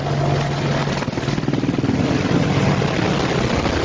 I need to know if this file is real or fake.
real